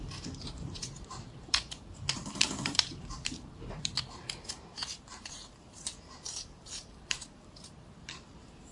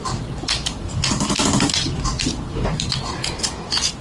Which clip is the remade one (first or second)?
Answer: first